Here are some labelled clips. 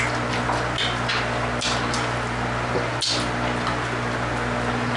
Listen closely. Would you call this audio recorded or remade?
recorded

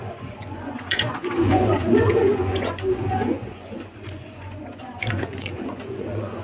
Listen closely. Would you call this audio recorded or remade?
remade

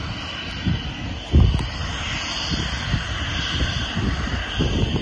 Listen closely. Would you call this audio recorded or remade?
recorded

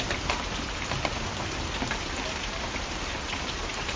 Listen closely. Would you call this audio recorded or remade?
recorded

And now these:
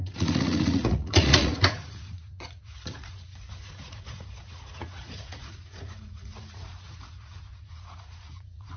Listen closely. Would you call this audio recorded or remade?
remade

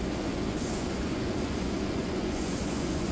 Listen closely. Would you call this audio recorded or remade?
remade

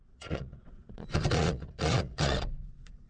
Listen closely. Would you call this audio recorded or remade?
remade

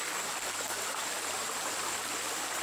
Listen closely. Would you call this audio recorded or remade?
recorded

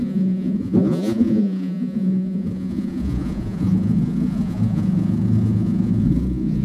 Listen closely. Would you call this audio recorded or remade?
remade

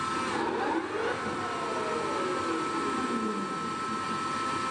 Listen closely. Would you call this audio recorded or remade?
recorded